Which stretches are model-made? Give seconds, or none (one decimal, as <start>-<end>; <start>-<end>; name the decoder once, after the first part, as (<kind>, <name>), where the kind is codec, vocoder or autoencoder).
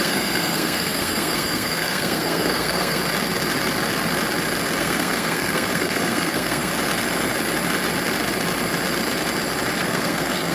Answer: 0.0-3.0 (codec, SNAC); 4.8-6.7; 9.8-10.5